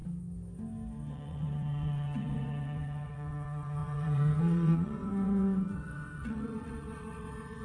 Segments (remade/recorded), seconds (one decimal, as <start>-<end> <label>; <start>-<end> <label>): 0.0-1.1 recorded; 1.1-7.6 remade